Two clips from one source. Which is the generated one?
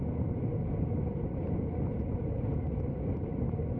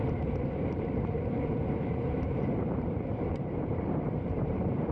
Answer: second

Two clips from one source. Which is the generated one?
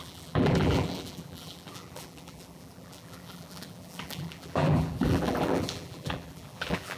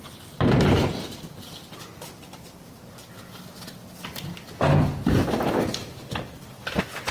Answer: first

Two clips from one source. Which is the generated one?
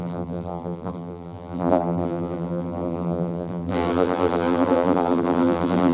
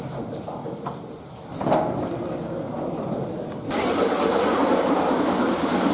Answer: first